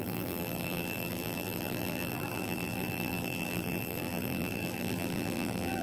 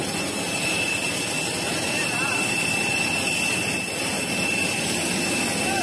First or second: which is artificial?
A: first